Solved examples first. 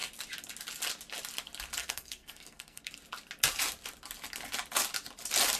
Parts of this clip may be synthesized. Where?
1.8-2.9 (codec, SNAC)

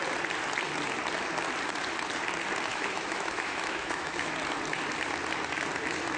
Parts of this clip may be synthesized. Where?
2.7-4.3 (autoencoder, DAC-VAE)

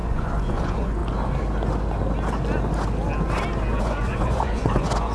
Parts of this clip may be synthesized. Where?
0.0-1.0 (vocoder, Vocos); 3.8-5.1